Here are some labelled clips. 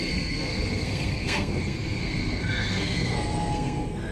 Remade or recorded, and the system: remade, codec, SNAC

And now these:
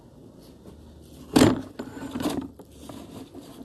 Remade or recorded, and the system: recorded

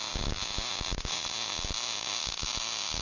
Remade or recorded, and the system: recorded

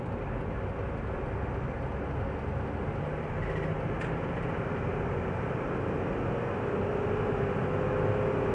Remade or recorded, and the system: recorded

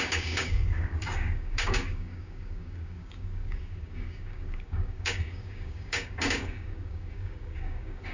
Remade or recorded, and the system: remade, codec, DAC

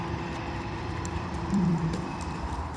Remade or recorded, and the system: remade, vocoder, BigVGAN v2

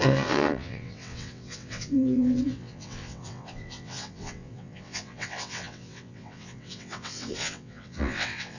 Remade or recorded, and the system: remade, vocoder, WaveNeXt